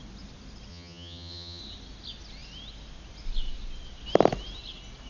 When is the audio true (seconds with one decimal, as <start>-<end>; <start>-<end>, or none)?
0.0-0.7; 1.6-5.1